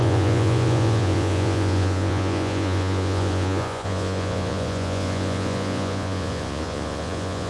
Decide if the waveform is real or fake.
fake